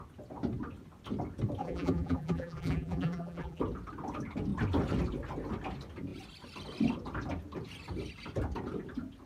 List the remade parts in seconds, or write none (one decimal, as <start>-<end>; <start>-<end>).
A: 1.6-3.6